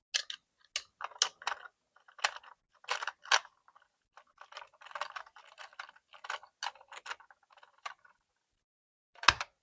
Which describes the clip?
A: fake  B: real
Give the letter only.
B